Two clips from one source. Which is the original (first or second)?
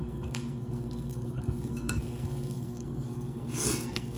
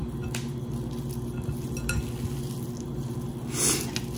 second